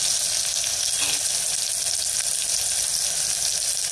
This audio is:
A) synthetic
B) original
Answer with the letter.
B